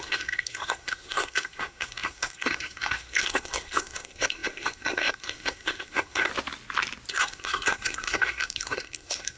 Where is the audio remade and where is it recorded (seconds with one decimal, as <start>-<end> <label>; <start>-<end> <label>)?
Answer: 0.0-6.3 remade; 6.3-7.1 recorded; 7.1-9.4 remade